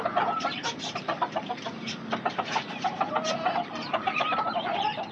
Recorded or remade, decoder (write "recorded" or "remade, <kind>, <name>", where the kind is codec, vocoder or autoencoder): remade, vocoder, BigVGAN v2